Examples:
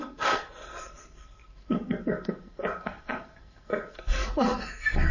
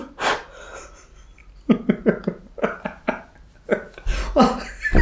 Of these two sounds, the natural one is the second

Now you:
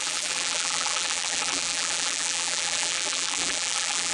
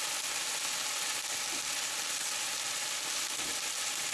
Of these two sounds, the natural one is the second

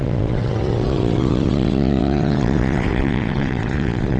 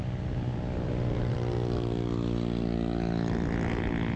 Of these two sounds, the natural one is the second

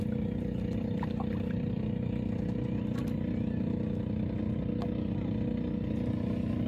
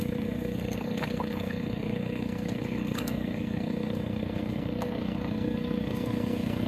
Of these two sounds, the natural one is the first